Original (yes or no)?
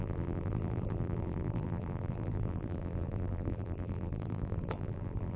no